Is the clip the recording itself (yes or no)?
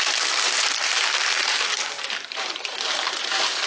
no